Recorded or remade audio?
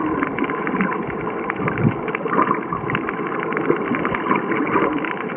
recorded